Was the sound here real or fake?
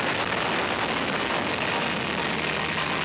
real